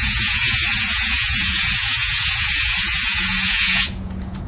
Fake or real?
fake